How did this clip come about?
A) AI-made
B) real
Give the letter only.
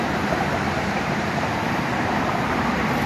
A